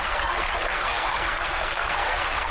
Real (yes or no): no